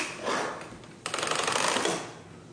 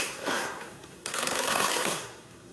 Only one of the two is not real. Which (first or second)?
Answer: second